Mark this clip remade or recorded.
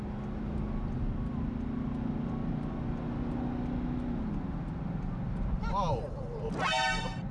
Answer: recorded